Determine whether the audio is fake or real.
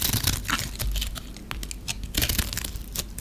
real